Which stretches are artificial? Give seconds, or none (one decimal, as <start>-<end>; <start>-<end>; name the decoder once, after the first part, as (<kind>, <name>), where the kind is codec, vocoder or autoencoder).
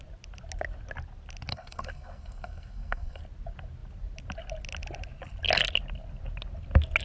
1.5-3.2 (codec, SNAC)